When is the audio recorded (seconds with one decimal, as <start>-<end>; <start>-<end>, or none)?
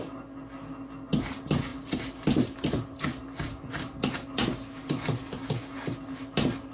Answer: 0.0-6.7